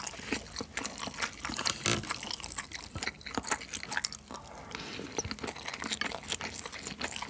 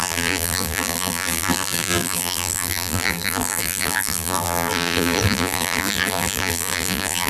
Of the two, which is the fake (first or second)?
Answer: second